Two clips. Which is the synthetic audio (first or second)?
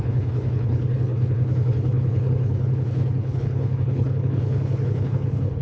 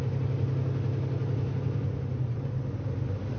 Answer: first